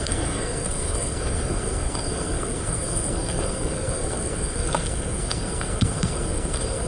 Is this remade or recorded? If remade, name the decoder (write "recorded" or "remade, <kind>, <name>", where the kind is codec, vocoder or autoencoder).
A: remade, codec, SNAC